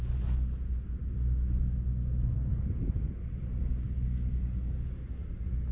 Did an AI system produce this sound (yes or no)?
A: no